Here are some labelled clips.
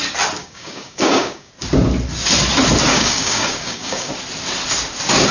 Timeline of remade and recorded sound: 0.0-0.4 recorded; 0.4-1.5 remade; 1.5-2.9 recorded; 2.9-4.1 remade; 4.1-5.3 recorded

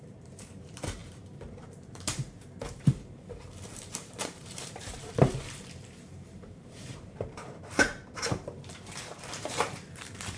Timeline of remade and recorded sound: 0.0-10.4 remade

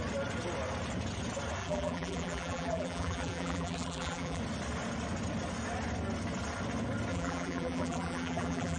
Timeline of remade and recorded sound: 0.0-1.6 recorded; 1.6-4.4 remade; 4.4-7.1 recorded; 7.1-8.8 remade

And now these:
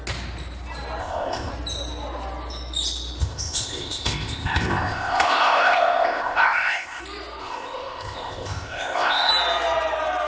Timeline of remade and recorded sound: 0.0-1.0 recorded; 1.0-1.5 remade; 1.5-3.2 recorded; 3.2-7.0 remade; 7.0-7.4 recorded; 7.4-9.3 remade; 9.3-10.3 recorded

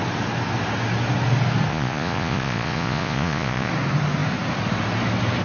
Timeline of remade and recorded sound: 0.0-1.7 recorded; 1.7-3.7 remade; 3.7-5.4 recorded

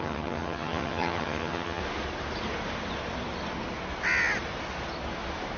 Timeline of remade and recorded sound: 0.0-1.8 remade; 1.8-5.6 recorded

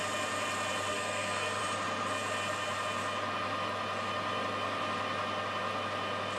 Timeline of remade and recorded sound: 0.0-0.9 recorded; 0.9-1.6 remade; 1.6-6.4 recorded